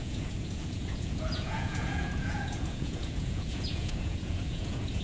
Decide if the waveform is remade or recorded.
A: remade